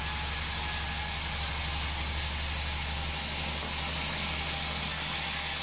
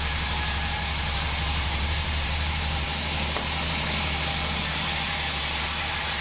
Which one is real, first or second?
first